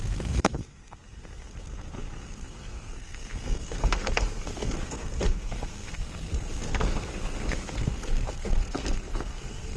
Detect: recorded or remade remade